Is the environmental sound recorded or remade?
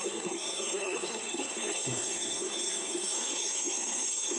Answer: remade